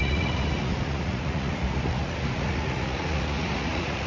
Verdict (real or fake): fake